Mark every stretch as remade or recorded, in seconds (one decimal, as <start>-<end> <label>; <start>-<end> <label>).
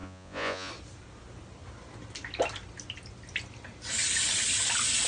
0.0-0.7 remade; 0.7-5.1 recorded